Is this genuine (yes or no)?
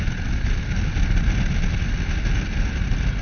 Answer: yes